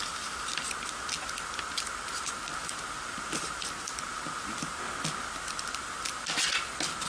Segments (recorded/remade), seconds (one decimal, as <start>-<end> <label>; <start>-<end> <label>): 0.0-7.1 recorded